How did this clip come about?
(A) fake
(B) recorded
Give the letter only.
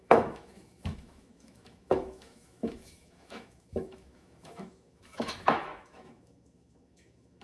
A